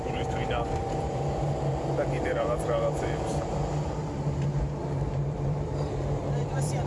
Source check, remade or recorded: remade